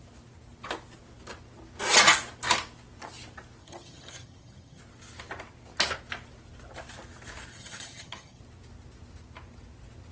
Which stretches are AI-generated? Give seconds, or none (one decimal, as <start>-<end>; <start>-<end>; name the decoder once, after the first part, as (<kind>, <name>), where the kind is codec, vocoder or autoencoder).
3.6-4.8 (vocoder, HiFi-GAN); 7.5-8.4